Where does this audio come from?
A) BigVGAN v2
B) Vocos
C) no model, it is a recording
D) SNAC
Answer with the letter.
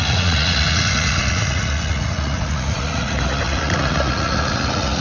B